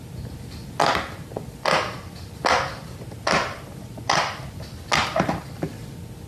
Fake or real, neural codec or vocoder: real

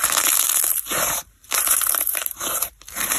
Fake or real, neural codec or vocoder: fake, vocoder, BigVGAN v2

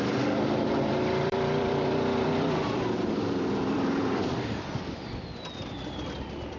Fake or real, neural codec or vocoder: fake, vocoder, BigVGAN v2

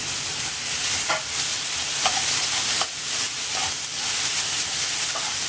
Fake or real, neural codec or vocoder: real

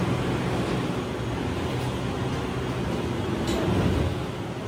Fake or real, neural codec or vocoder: real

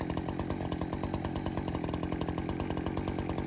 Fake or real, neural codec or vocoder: real